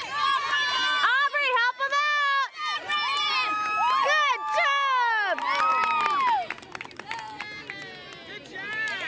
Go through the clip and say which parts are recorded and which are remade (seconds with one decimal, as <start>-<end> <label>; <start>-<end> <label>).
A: 0.0-9.1 recorded